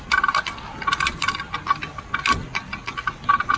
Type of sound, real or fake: real